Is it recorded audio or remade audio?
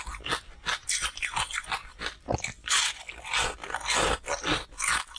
recorded